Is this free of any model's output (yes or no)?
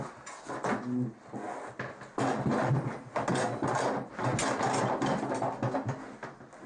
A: yes